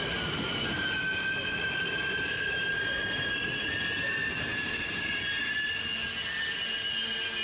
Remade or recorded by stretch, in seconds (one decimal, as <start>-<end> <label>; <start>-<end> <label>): 0.0-7.4 recorded